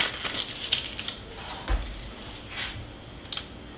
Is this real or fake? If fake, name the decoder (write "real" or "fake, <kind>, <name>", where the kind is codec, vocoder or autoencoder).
real